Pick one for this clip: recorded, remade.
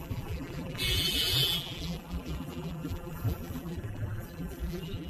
remade